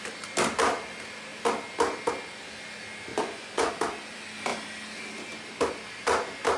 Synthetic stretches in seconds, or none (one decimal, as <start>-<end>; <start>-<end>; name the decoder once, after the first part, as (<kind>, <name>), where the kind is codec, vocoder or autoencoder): 3.1-3.7 (vocoder, Vocos)